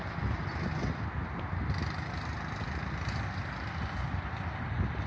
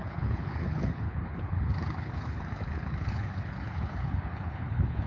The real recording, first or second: first